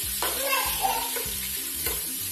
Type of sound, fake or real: fake